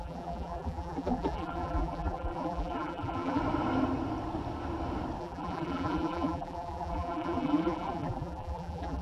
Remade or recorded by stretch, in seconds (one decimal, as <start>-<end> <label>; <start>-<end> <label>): 0.0-3.4 remade; 3.4-5.2 recorded; 5.2-9.0 remade

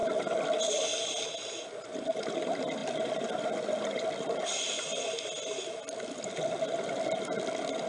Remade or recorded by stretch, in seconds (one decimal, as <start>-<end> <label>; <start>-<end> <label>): 0.0-7.9 recorded